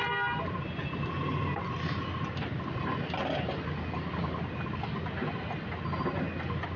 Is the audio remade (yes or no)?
no